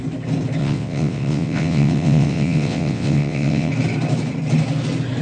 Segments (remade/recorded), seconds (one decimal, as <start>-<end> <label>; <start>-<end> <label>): 0.0-0.6 recorded; 0.6-3.7 remade; 3.7-5.2 recorded